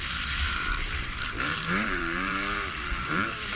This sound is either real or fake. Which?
fake